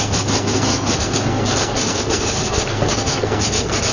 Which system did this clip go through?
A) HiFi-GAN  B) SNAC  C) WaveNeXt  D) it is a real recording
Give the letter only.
B